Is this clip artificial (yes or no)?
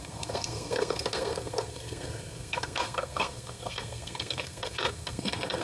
yes